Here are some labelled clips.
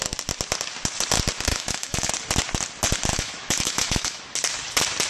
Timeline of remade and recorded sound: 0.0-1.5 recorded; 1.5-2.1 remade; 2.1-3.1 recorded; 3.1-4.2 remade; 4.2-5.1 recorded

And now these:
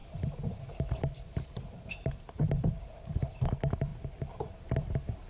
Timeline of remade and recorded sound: 0.0-5.3 recorded

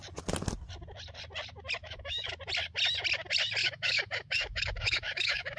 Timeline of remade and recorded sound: 0.0-1.8 recorded; 1.8-2.3 remade; 2.3-3.6 recorded; 3.6-5.6 remade

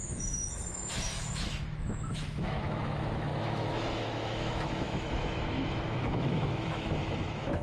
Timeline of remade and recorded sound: 0.0-7.6 remade

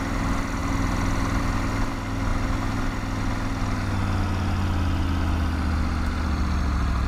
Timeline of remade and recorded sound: 0.0-7.1 recorded

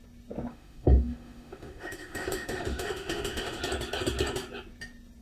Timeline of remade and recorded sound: 0.0-0.5 recorded; 0.5-3.6 remade; 3.6-5.2 recorded

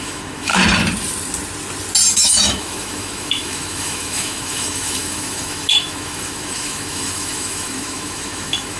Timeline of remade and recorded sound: 0.0-0.5 remade; 0.5-2.1 recorded; 2.1-8.8 remade